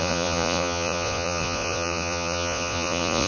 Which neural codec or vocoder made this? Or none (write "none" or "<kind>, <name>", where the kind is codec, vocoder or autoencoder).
vocoder, Vocos